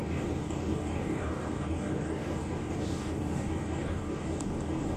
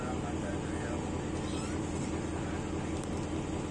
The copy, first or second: first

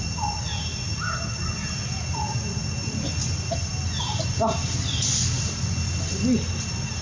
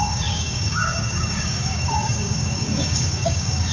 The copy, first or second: second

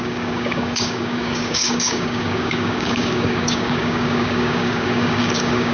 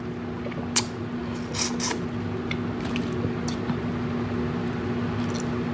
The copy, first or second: first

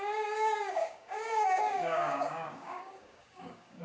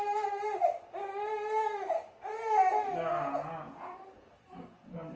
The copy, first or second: first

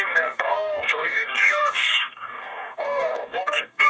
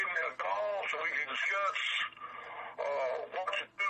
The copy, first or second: first